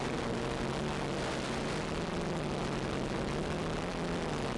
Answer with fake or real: real